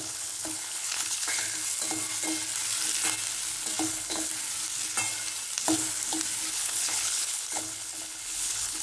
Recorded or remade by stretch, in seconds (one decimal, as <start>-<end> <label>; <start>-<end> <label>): 0.0-1.6 remade; 1.6-3.9 recorded; 3.9-4.3 remade; 4.3-6.5 recorded; 6.5-8.8 remade